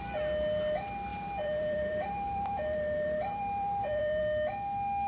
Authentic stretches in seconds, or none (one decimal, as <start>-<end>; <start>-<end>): 0.0-1.1; 4.2-5.1